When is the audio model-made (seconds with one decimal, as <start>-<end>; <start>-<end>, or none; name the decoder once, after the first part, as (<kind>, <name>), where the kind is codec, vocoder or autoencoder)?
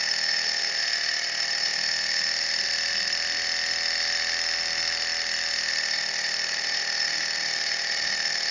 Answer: none